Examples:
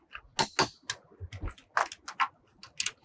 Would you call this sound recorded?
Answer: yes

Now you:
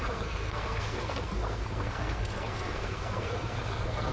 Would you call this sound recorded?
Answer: no